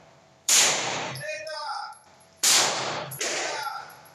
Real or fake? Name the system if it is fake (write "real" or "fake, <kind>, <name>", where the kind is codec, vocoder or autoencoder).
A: fake, vocoder, BigVGAN v2